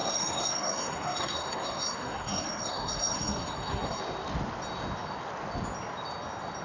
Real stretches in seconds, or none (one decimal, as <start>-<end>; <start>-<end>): 4.0-6.6